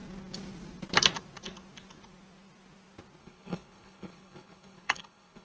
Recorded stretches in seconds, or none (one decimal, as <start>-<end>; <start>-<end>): 0.0-3.2